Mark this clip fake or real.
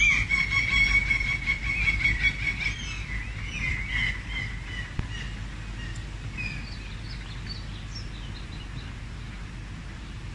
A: real